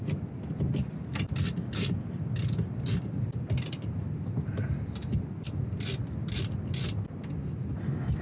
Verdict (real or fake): real